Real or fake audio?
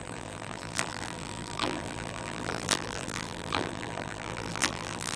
fake